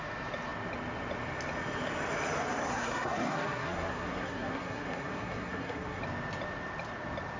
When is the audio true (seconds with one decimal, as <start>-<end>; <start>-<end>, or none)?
0.0-2.7; 6.0-7.4